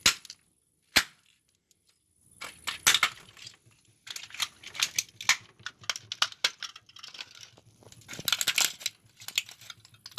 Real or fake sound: real